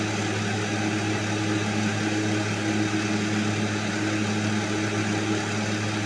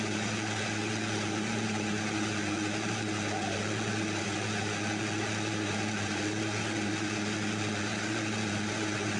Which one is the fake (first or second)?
second